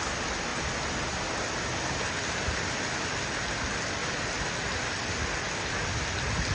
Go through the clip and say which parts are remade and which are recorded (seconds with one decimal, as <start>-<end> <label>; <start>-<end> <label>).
0.0-6.5 recorded